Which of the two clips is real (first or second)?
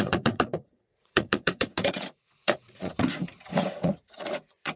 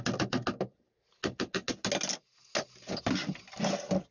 second